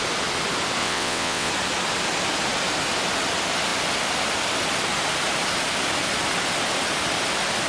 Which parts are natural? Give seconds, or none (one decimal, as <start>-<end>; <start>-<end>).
0.0-0.8; 1.5-7.7